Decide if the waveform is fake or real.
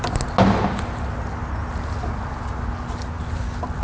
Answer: real